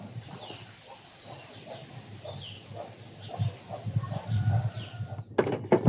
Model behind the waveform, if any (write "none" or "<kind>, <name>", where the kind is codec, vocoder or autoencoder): none